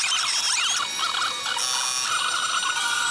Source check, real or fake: real